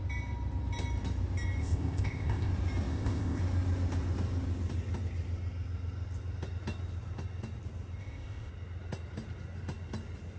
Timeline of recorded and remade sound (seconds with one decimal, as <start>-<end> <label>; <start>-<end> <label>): 0.0-1.6 recorded; 1.6-2.5 remade; 2.5-2.9 recorded; 2.9-3.4 remade; 3.4-8.0 recorded; 8.0-8.5 remade; 8.5-10.4 recorded